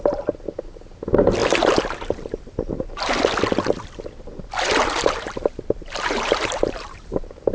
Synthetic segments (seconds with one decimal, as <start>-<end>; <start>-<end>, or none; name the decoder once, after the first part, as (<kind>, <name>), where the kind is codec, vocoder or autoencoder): 1.4-3.1 (vocoder, BigVGAN v2); 4.8-7.5

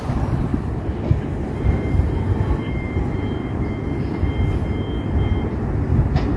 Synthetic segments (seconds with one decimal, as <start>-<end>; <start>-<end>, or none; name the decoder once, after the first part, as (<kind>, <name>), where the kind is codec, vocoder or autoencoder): 0.5-4.3 (vocoder, BigVGAN v2)

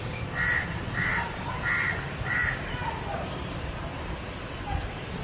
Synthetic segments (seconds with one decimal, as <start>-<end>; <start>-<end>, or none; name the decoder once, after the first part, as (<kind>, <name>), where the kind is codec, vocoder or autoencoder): 0.0-1.1 (vocoder, BigVGAN v2); 1.8-5.2

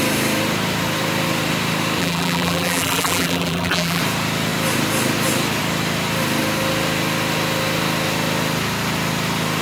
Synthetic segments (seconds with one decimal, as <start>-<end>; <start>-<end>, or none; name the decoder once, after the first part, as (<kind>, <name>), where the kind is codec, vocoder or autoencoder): 2.0-4.0 (vocoder, BigVGAN v2)

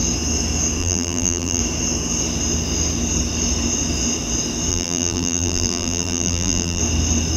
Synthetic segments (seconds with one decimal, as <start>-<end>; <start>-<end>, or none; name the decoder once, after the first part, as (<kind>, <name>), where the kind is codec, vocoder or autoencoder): 0.8-1.6 (vocoder, BigVGAN v2); 4.7-6.8

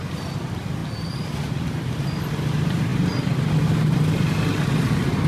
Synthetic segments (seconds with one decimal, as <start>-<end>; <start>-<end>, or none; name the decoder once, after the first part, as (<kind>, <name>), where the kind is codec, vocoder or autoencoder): 0.8-2.2 (vocoder, BigVGAN v2)

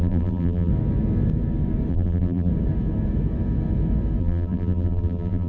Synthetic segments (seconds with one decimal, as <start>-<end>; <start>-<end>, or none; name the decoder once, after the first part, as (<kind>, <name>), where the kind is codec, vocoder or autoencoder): 0.0-0.7 (vocoder, BigVGAN v2); 1.9-2.5; 4.2-5.5